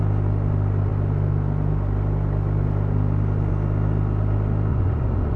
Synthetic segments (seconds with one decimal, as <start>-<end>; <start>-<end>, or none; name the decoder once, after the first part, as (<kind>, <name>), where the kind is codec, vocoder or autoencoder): 4.7-5.4 (vocoder, Vocos)